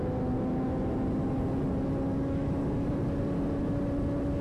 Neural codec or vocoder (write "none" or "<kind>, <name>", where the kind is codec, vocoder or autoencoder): none